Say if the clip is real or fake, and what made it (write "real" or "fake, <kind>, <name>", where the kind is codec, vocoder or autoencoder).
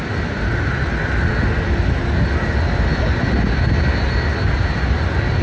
real